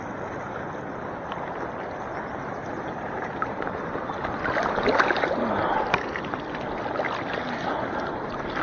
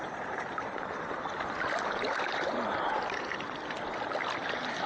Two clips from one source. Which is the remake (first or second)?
second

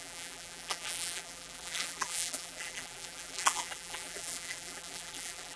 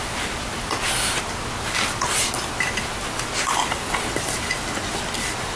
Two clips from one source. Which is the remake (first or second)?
first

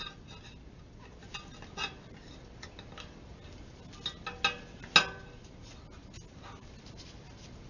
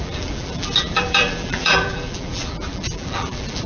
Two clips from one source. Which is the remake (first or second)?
second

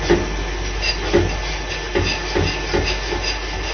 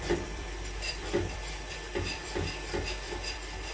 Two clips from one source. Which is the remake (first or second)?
second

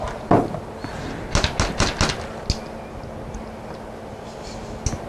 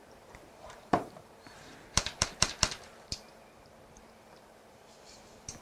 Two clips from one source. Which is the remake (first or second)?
second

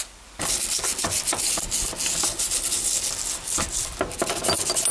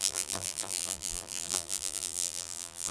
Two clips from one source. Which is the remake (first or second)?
second